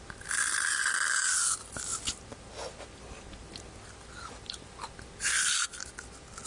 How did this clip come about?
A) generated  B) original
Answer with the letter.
B